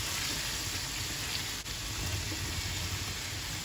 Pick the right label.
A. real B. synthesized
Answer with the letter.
A